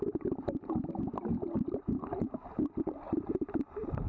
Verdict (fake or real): real